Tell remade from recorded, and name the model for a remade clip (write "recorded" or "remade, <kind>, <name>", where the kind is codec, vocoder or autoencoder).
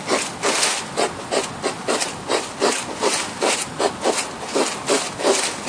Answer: recorded